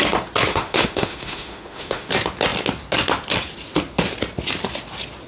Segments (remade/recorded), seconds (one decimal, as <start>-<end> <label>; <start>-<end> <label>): 0.0-0.5 recorded; 0.5-2.1 remade; 2.1-5.3 recorded